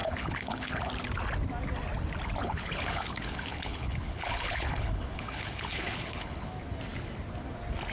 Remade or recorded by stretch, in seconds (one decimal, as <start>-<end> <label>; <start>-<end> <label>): 0.0-0.9 remade; 0.9-2.4 recorded; 2.4-6.5 remade; 6.5-7.9 recorded

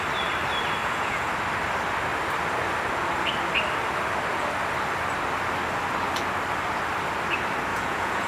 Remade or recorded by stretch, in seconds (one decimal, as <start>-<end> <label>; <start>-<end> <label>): 0.0-0.8 recorded; 0.8-1.3 remade; 1.3-7.7 recorded; 7.7-8.3 remade

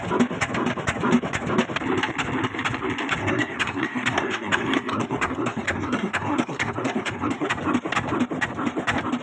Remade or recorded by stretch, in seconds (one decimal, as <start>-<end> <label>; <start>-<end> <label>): 0.0-3.2 recorded; 3.2-7.5 remade; 7.5-9.2 recorded

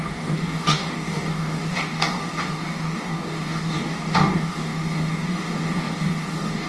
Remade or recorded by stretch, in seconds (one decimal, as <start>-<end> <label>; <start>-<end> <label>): 0.0-6.7 remade

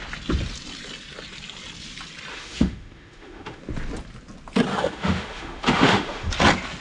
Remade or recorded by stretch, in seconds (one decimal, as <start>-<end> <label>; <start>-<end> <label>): 0.0-2.3 recorded; 2.3-3.6 remade; 3.6-4.7 recorded; 4.7-6.3 remade; 6.3-6.8 recorded

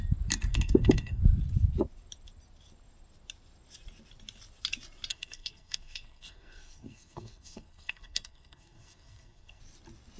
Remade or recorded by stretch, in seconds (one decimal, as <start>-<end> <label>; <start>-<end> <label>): 0.0-0.5 recorded; 0.5-1.2 remade; 1.2-5.1 recorded; 5.1-9.6 remade; 9.6-10.2 recorded

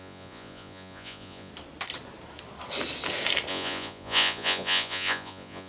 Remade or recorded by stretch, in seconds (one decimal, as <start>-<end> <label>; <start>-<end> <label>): 0.0-1.5 remade; 1.5-3.5 recorded; 3.5-5.7 remade

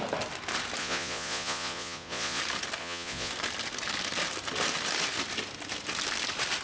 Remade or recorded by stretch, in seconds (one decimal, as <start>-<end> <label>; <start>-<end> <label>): 0.0-0.8 recorded; 0.8-2.4 remade; 2.4-2.8 recorded; 2.8-3.3 remade; 3.3-6.6 recorded